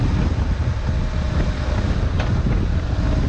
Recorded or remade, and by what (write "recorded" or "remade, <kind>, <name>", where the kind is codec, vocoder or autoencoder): recorded